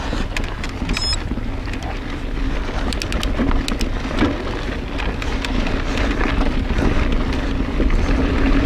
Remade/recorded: recorded